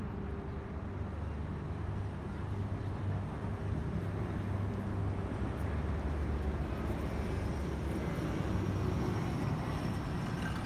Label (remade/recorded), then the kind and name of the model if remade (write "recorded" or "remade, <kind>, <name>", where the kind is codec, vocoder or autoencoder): recorded